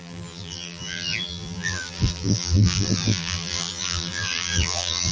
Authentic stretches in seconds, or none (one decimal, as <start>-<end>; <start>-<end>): none